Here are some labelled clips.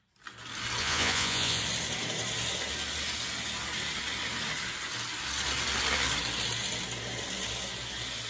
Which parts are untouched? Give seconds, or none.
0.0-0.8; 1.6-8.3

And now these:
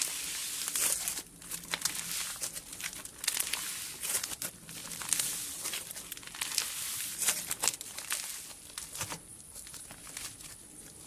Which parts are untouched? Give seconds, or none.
0.0-2.7; 3.5-4.8; 6.1-9.3; 9.8-11.1

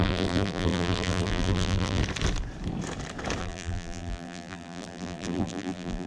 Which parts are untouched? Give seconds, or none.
2.0-3.4

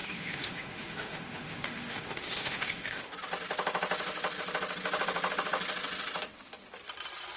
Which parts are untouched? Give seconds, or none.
3.1-7.4